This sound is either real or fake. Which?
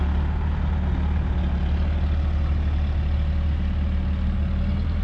real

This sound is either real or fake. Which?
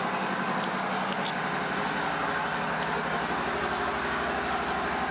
real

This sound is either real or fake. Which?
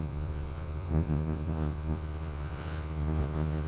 fake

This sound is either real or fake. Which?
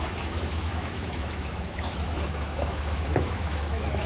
fake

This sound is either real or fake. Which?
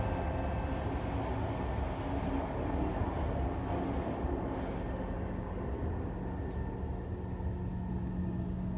real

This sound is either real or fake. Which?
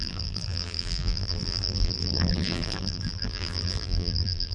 fake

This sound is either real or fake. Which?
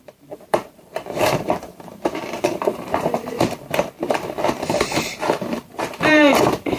fake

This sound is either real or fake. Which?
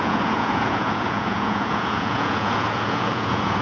fake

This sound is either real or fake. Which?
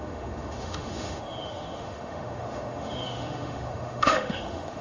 fake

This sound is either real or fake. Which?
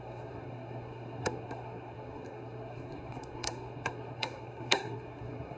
fake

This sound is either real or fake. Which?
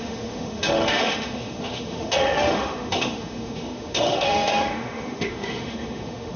fake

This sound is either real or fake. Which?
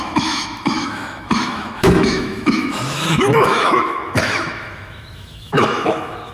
fake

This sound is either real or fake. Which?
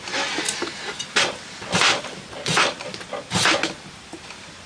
real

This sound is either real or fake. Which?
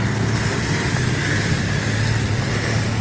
real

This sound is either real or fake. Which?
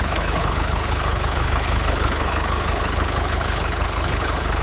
fake